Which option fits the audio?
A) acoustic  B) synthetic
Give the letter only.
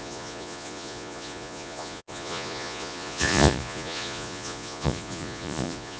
B